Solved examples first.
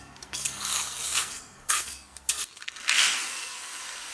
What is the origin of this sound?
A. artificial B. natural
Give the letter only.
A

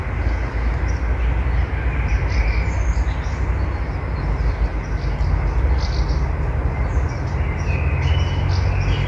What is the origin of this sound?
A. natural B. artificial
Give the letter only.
A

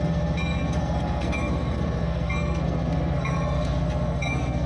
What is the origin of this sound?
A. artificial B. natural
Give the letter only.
A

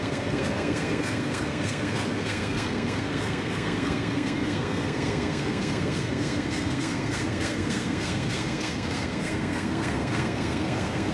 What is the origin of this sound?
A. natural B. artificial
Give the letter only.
B